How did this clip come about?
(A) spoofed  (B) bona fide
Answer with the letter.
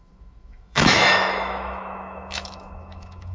A